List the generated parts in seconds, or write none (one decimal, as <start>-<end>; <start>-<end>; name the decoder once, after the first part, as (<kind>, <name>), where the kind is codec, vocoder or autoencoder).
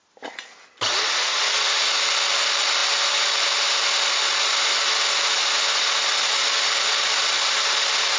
none